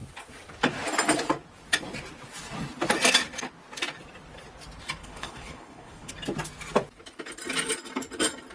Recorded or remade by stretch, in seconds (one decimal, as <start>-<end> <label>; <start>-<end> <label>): 0.0-5.0 recorded; 5.0-6.1 remade; 6.1-8.5 recorded